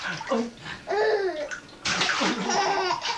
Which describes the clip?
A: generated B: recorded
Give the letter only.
B